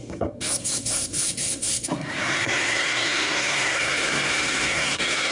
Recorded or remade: remade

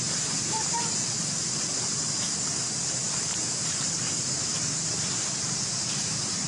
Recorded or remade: remade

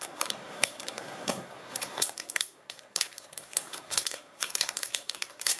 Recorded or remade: remade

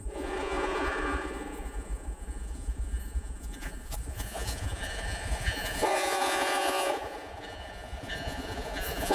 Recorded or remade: remade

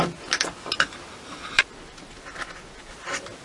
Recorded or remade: recorded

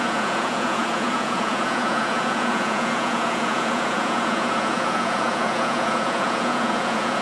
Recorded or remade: remade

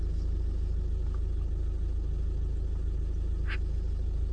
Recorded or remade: recorded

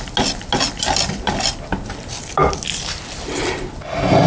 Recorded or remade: recorded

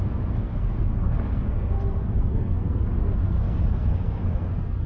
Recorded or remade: remade